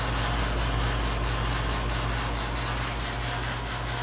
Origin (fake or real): real